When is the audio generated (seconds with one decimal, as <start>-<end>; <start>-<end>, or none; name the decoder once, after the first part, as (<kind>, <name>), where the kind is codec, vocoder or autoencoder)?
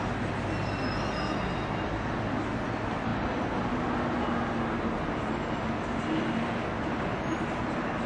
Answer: none